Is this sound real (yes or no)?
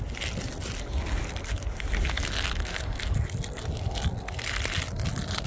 yes